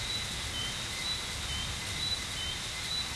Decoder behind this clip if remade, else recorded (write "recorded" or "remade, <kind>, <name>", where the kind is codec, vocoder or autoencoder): recorded